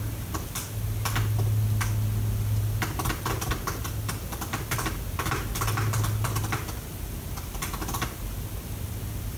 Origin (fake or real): real